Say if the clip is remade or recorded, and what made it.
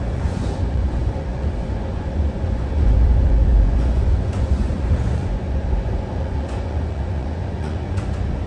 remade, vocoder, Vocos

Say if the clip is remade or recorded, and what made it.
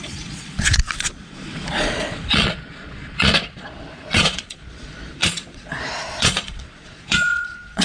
remade, vocoder, Vocos